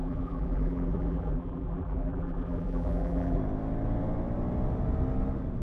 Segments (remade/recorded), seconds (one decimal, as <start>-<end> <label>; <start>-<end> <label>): 0.0-3.4 remade; 3.4-5.6 recorded